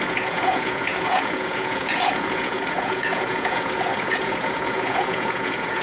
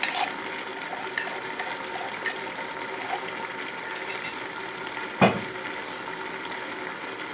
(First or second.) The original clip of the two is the second